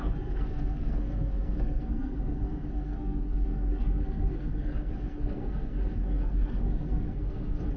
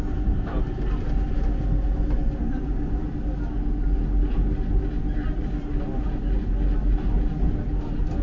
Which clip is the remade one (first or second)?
first